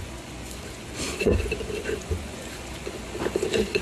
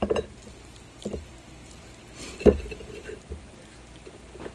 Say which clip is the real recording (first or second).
second